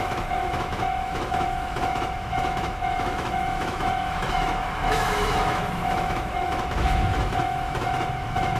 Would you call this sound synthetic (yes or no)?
yes